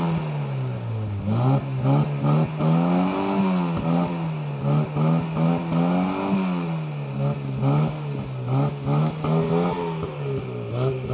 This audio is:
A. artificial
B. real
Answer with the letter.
B